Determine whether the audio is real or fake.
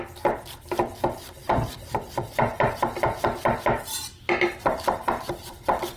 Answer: real